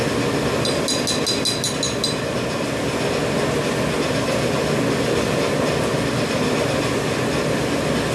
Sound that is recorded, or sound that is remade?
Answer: recorded